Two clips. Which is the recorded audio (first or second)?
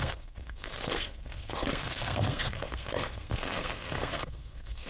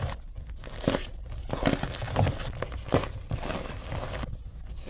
second